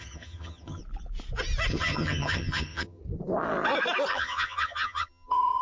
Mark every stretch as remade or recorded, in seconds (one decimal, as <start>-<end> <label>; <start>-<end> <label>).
0.0-0.8 remade; 0.8-1.7 recorded; 1.7-3.0 remade; 3.0-4.1 recorded; 4.1-5.6 remade

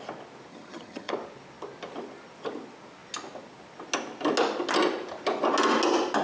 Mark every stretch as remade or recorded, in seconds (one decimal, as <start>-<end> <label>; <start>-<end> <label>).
0.0-0.5 recorded; 0.5-1.1 remade; 1.1-6.2 recorded

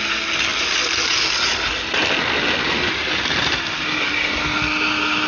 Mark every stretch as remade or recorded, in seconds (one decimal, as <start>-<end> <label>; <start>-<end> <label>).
0.0-5.3 recorded

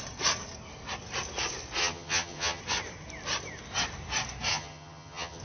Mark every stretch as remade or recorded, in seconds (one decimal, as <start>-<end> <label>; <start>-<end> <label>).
0.0-1.8 recorded; 1.8-2.6 remade; 2.6-4.5 recorded; 4.5-5.4 remade

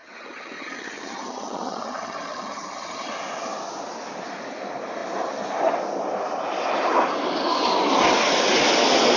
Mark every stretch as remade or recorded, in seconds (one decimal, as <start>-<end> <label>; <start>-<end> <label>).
0.0-3.1 remade; 3.1-9.2 recorded